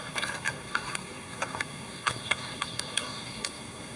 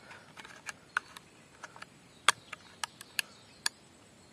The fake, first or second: first